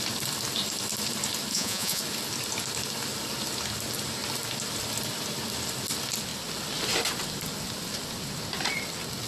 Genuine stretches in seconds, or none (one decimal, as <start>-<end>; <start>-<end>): 0.0-1.5; 2.0-9.3